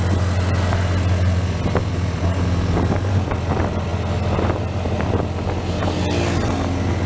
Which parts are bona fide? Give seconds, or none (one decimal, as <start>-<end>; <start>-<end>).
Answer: 0.0-7.1